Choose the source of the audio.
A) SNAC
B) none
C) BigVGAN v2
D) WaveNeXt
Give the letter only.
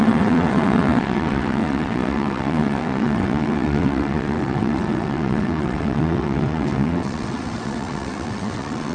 D